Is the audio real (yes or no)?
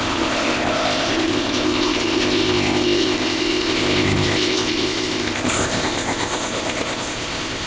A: no